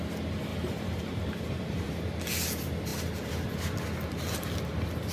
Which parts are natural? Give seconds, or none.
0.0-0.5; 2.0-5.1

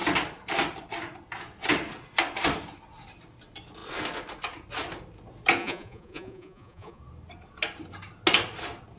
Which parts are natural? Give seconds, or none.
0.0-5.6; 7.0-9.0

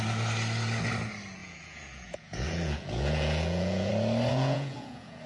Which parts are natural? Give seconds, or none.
0.0-1.4; 3.9-4.3